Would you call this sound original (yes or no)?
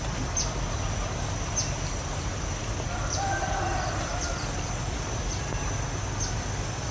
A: yes